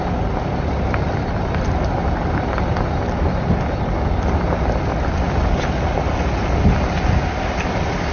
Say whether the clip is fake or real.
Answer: real